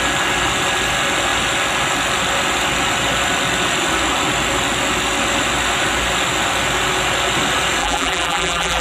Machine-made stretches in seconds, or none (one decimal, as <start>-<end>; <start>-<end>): 7.8-8.8